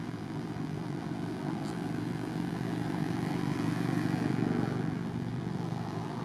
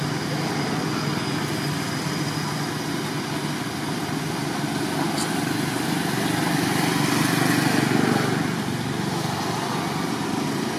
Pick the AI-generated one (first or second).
first